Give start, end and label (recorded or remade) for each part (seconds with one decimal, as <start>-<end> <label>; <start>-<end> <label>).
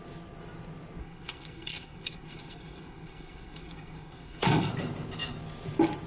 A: 0.0-1.0 recorded; 1.0-4.7 remade; 4.7-6.1 recorded